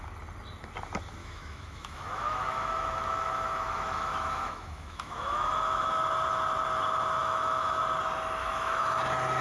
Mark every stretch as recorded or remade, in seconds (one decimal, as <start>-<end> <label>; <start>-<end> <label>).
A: 0.0-1.2 recorded; 1.2-6.0 remade; 6.0-7.2 recorded; 7.2-7.8 remade; 7.8-8.4 recorded; 8.4-9.0 remade; 9.0-9.4 recorded